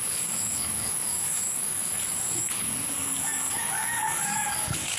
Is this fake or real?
fake